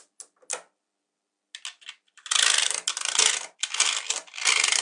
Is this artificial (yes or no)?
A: no